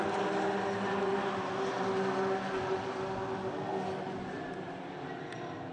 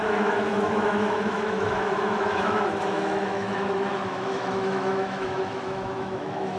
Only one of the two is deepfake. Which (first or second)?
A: second